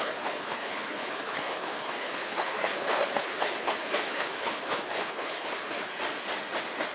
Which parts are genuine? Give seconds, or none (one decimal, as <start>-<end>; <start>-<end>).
5.9-6.9